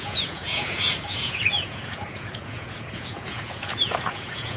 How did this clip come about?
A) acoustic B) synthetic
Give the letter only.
B